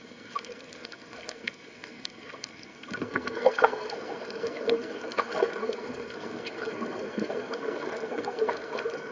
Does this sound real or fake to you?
fake